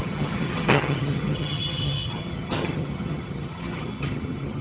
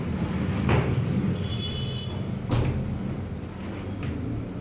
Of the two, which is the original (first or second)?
second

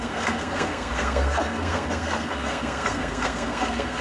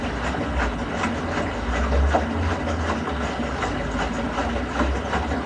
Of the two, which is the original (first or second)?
second